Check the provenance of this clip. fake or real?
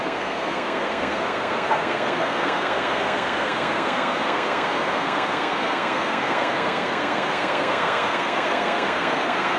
fake